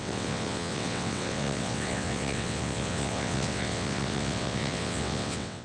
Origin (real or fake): fake